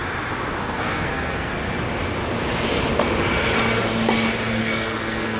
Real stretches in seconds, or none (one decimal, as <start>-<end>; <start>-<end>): 0.0-0.6; 1.5-4.6